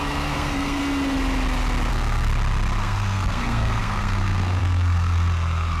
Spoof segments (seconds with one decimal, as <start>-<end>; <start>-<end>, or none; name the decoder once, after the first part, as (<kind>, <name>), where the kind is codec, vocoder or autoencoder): 0.0-0.8 (codec, SNAC); 1.9-2.3; 2.8-5.8